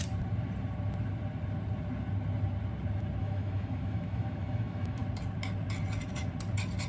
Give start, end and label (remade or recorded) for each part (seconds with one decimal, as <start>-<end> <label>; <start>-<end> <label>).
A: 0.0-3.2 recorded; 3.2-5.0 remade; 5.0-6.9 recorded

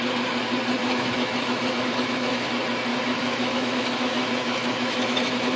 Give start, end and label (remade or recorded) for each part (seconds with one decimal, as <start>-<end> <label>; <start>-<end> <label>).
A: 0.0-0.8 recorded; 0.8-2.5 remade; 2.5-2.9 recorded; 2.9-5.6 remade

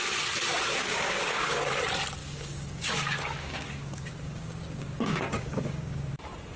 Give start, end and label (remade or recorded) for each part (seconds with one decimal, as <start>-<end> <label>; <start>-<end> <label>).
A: 0.0-0.8 recorded; 0.8-1.7 remade; 1.7-2.2 recorded; 2.2-6.1 remade; 6.1-6.6 recorded